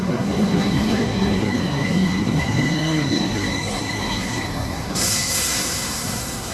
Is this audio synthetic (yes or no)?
yes